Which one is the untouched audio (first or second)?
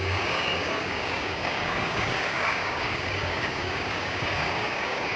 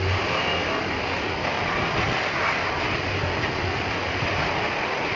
second